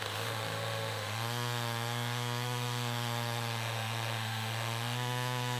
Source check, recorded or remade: remade